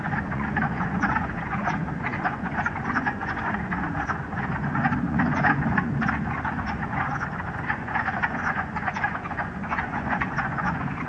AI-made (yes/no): yes